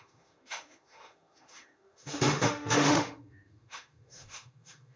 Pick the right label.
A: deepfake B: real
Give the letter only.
A